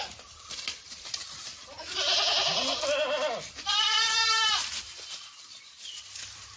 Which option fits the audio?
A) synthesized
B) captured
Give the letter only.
A